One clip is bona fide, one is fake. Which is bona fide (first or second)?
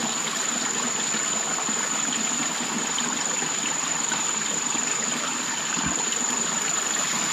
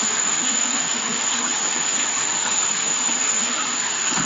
first